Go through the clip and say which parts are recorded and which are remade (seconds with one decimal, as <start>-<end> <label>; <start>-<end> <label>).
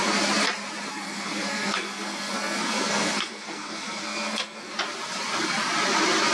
0.0-0.9 recorded; 0.9-4.7 remade; 4.7-6.3 recorded